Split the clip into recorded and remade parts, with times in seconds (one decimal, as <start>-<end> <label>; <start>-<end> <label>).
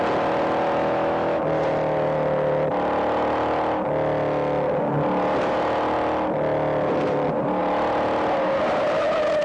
0.0-0.8 recorded; 0.8-1.4 remade; 1.4-9.4 recorded